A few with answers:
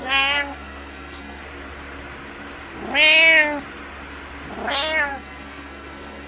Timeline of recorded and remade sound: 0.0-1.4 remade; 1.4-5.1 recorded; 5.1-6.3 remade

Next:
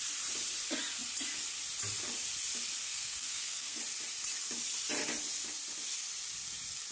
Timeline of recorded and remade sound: 0.0-2.8 recorded; 2.8-3.8 remade; 3.8-6.9 recorded

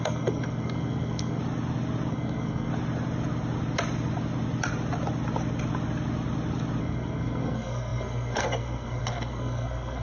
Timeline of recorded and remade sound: 0.0-1.4 remade; 1.4-2.1 recorded; 2.1-2.7 remade; 2.7-6.8 recorded; 6.8-10.0 remade

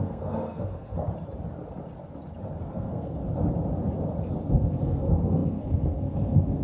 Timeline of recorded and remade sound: 0.0-1.1 remade; 1.1-2.7 recorded; 2.7-3.2 remade; 3.2-4.5 recorded; 4.5-6.6 remade

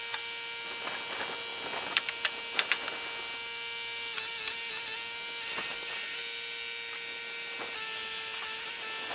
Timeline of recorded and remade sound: 0.0-9.1 recorded

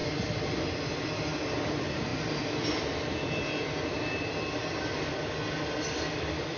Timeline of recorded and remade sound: 0.0-6.6 recorded